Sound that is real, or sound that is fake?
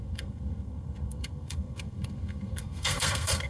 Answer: fake